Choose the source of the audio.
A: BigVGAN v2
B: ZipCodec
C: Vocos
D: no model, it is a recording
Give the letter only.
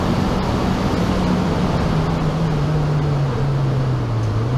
D